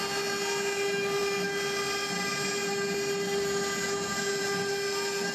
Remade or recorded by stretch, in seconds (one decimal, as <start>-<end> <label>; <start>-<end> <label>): 0.0-5.3 recorded